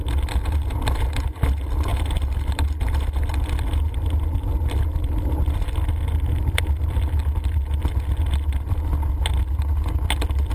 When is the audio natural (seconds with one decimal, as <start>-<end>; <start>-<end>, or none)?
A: 0.0-10.5